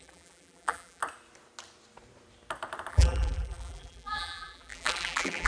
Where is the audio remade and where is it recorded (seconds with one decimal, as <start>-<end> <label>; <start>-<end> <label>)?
0.0-1.0 remade; 1.0-2.9 recorded; 2.9-5.5 remade